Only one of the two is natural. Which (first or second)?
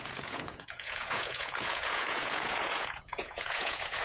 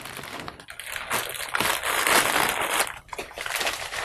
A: second